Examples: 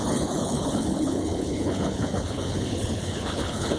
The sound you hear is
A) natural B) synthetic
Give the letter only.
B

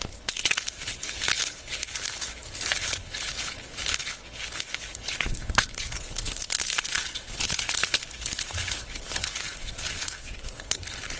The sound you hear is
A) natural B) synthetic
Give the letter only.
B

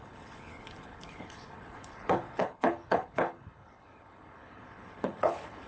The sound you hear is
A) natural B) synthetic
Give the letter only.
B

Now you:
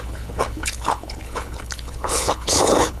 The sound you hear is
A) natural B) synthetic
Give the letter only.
B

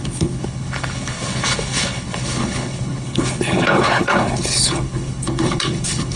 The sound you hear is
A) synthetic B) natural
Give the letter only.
A